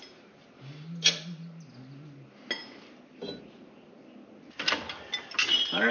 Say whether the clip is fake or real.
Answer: real